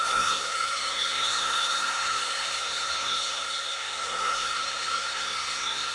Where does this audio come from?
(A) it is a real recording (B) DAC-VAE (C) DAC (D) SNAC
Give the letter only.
D